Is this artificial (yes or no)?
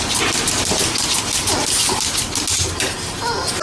no